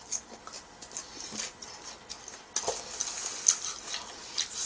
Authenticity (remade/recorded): recorded